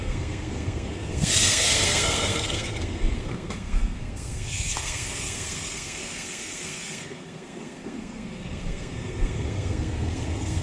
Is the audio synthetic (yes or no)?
yes